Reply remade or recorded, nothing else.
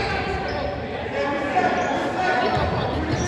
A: recorded